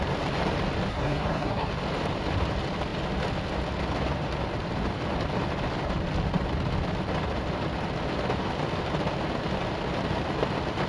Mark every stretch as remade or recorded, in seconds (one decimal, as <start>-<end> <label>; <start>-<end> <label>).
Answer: 0.0-0.9 recorded; 0.9-1.7 remade; 1.7-10.9 recorded